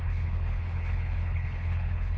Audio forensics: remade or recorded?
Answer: remade